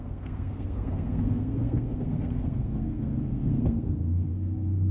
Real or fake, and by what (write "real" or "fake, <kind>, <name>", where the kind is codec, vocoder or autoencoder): fake, codec, SNAC